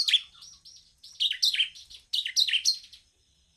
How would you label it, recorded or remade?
recorded